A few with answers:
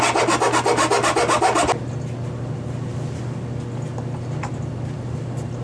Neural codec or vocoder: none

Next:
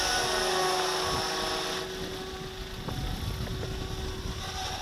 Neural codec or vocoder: none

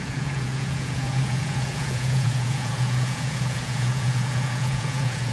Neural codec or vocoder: vocoder, Vocos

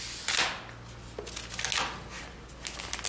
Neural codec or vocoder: none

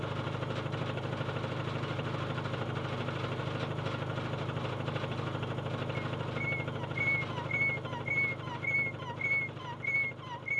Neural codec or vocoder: none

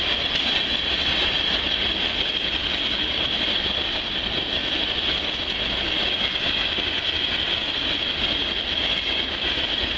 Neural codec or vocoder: none